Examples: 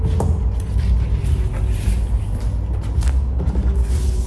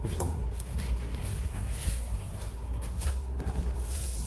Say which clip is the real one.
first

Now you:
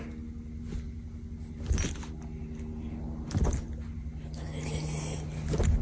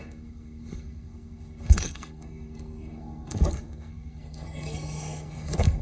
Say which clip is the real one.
first